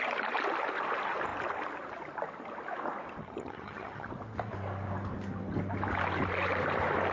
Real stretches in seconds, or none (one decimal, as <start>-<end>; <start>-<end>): 0.0-3.2; 4.1-7.1